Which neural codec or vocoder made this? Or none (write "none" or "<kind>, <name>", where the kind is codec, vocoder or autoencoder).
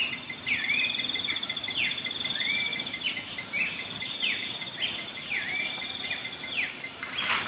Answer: none